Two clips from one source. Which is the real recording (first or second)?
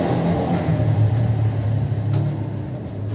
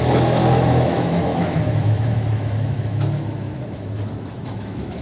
first